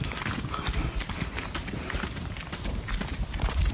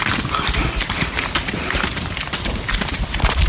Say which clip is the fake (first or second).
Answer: second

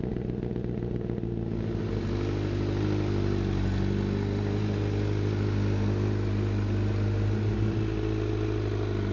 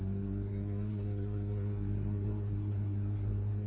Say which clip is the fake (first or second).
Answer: second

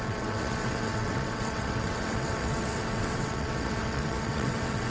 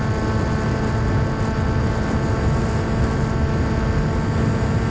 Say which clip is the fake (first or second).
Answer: first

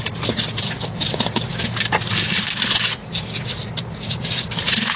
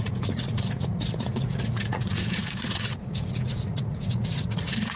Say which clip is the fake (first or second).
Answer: second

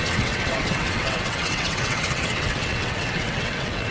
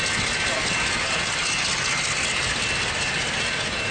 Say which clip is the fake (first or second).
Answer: first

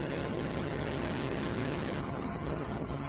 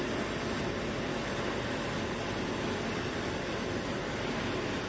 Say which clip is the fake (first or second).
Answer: first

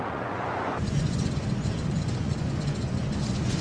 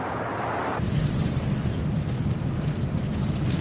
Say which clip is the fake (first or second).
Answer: first